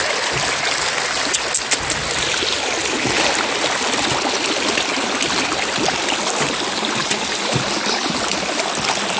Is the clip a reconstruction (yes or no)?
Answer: no